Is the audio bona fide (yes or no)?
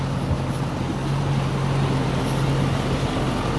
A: yes